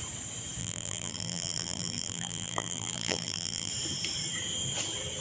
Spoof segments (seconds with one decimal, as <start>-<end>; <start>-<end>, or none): 0.6-3.7